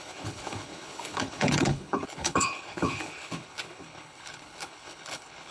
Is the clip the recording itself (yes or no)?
no